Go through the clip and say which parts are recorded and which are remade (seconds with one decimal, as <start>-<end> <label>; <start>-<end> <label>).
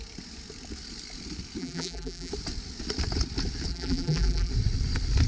0.0-1.6 recorded; 1.6-2.3 remade; 2.3-3.7 recorded; 3.7-4.5 remade; 4.5-5.3 recorded